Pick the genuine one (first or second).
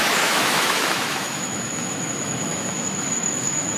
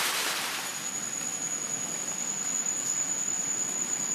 second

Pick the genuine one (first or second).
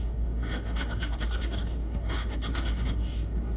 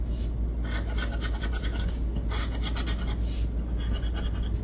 second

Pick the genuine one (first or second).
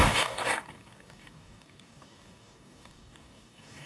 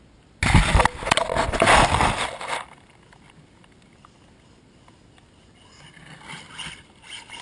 second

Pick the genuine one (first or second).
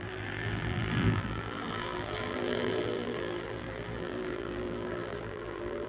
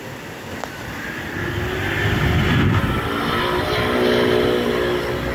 second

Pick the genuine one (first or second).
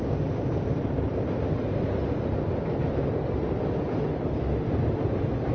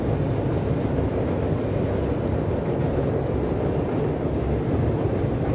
second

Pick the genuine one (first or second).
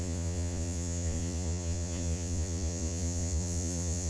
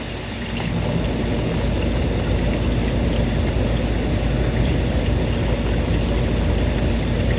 second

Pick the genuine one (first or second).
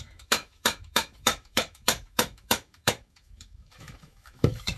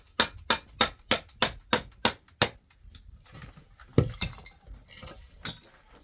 second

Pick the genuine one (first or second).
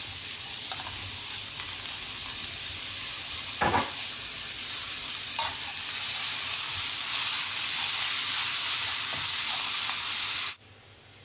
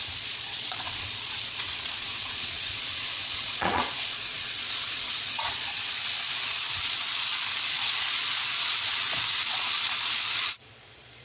first